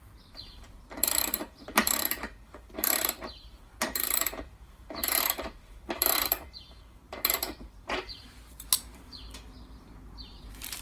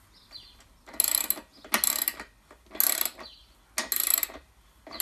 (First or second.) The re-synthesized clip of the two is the first